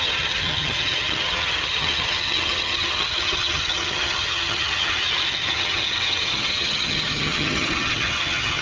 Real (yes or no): no